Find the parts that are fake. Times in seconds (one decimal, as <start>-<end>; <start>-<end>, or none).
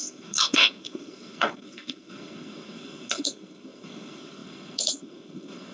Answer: 0.0-5.7